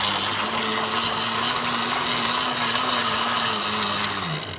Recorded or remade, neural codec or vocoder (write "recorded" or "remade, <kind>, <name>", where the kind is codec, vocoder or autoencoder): recorded